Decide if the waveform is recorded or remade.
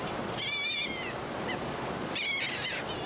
recorded